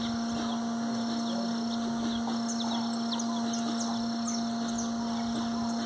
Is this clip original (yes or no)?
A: yes